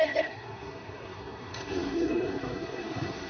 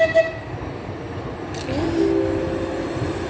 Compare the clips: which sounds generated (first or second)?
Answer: first